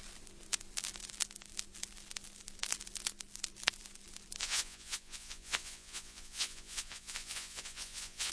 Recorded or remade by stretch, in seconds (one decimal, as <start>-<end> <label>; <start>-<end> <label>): 0.0-4.4 recorded; 4.4-8.3 remade